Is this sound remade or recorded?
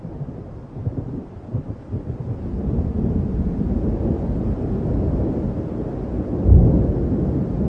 recorded